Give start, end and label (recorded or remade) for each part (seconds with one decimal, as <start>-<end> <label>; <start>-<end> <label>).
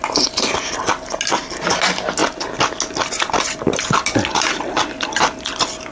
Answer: 0.0-5.9 recorded